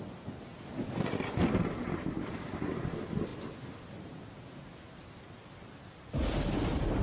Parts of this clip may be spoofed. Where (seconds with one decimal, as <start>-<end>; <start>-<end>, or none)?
none